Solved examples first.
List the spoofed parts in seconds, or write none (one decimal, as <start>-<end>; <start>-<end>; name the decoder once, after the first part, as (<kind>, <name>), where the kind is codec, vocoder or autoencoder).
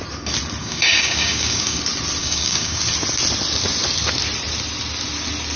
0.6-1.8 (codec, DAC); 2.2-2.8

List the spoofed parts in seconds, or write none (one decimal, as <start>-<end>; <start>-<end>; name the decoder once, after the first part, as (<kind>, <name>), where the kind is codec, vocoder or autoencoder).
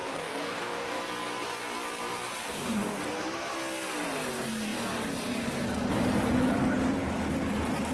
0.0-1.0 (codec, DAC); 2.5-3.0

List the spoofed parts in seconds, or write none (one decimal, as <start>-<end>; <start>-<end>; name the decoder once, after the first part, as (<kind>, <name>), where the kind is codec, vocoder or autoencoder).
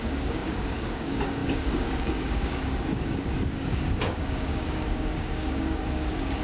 0.0-6.4 (codec, DAC)